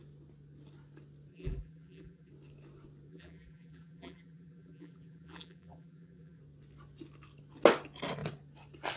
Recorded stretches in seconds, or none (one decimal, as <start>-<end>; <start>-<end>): 0.0-1.3; 2.3-3.1; 6.4-9.0